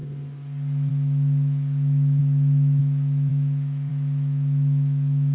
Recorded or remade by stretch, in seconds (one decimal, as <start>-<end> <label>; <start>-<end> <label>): 0.0-0.9 recorded; 0.9-5.3 remade